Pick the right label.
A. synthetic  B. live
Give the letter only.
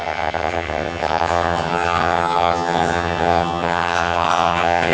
A